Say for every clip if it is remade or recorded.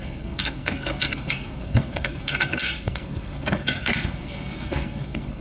remade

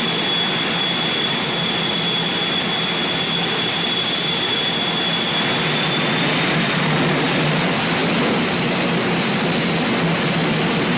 recorded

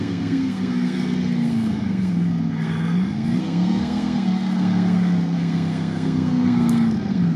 remade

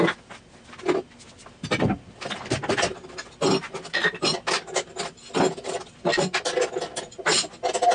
recorded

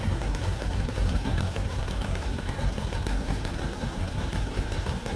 remade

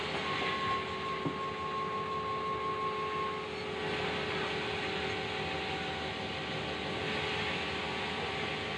recorded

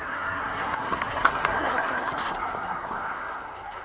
remade